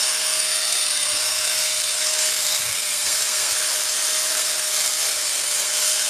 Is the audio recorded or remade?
remade